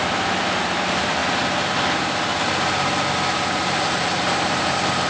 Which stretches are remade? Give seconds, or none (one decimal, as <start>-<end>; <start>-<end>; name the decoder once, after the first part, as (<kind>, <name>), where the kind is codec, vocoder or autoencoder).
0.0-1.2 (vocoder, BigVGAN v2); 3.1-5.1